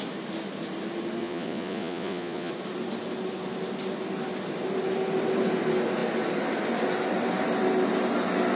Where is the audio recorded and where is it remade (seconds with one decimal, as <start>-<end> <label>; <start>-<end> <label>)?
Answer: 0.0-1.2 recorded; 1.2-2.5 remade; 2.5-8.6 recorded

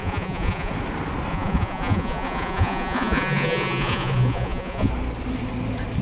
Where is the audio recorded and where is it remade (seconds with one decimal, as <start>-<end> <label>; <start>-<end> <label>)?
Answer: 0.0-0.7 remade; 0.7-1.3 recorded; 1.3-4.9 remade; 4.9-6.0 recorded

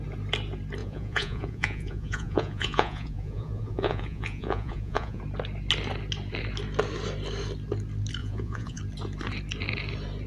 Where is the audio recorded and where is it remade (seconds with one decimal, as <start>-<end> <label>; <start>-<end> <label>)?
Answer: 0.0-0.8 recorded; 0.8-5.2 remade; 5.2-8.2 recorded; 8.2-8.8 remade; 8.8-10.3 recorded

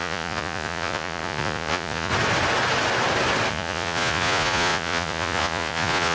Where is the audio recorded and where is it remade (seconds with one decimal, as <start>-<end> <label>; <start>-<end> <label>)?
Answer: 0.0-2.1 remade; 2.1-3.5 recorded; 3.5-6.1 remade

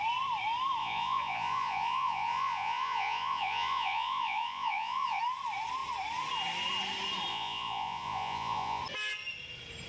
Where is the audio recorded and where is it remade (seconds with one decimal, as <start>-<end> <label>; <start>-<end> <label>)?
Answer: 0.0-0.8 recorded; 0.8-5.2 remade; 5.2-7.3 recorded; 7.3-8.8 remade; 8.8-9.9 recorded

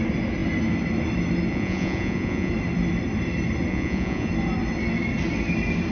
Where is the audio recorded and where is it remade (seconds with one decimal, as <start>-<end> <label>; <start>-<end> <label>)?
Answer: 0.0-1.5 recorded; 1.5-2.5 remade; 2.5-3.7 recorded; 3.7-4.3 remade; 4.3-5.9 recorded